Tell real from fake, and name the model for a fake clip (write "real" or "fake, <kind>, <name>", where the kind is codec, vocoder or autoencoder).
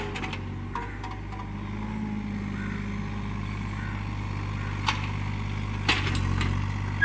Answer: real